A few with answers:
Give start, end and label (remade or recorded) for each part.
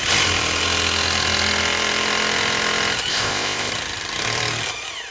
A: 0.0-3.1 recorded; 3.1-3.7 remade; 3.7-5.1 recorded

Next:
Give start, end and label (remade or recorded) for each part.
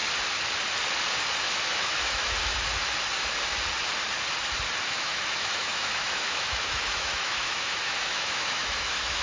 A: 0.0-1.6 recorded; 1.6-2.5 remade; 2.5-4.8 recorded; 4.8-9.2 remade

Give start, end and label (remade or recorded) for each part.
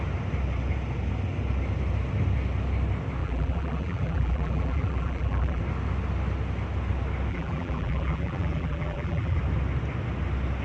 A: 0.0-3.2 recorded; 3.2-5.6 remade; 5.6-7.3 recorded; 7.3-9.4 remade; 9.4-10.6 recorded